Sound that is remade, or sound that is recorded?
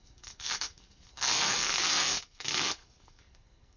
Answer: remade